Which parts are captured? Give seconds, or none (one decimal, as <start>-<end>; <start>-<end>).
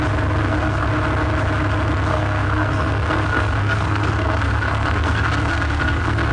0.0-0.4; 0.9-2.1